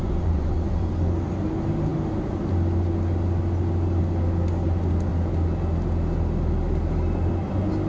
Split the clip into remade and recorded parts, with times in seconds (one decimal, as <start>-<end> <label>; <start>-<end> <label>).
0.0-0.9 remade; 0.9-7.9 recorded